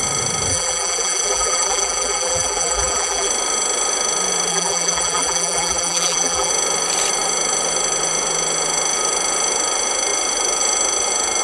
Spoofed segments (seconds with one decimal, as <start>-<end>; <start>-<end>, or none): 0.5-3.3; 4.5-6.5